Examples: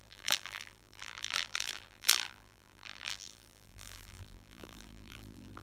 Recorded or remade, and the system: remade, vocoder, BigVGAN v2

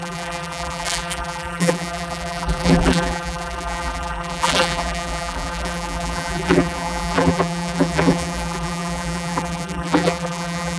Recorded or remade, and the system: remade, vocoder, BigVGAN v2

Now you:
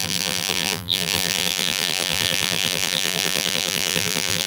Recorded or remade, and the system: remade, vocoder, BigVGAN v2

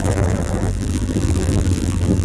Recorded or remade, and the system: remade, vocoder, BigVGAN v2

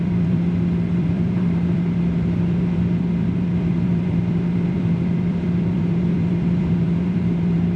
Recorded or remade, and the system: remade, vocoder, BigVGAN v2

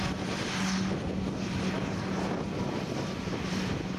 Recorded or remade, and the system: recorded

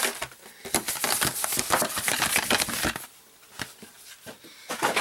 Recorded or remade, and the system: recorded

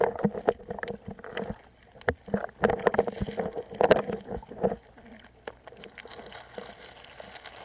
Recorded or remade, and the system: recorded